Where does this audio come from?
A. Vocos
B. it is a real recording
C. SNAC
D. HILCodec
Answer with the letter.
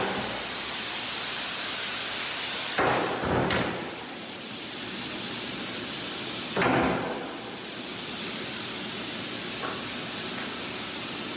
B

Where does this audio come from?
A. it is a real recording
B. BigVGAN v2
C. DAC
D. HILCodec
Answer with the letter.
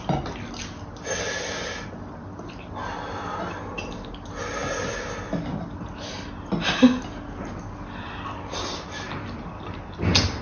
A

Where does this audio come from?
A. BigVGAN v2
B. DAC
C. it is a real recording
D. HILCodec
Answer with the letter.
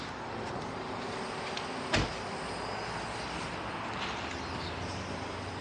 C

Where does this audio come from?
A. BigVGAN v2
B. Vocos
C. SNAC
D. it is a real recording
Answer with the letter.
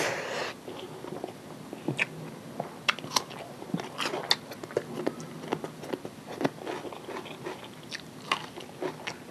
D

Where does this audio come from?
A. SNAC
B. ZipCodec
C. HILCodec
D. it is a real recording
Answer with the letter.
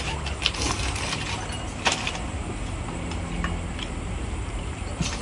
D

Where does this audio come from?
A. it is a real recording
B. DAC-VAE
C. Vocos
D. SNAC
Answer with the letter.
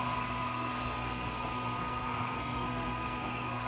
D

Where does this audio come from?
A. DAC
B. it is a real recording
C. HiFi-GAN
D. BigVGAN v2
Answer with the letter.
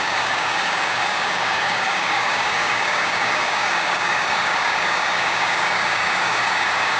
A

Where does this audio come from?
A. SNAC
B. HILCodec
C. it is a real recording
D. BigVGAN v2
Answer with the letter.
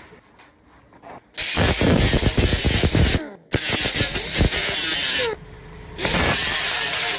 C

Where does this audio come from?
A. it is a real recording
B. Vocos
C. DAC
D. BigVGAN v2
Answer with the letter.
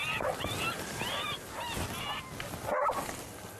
A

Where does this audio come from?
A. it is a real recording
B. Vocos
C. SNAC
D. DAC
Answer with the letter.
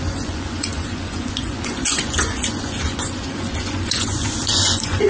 B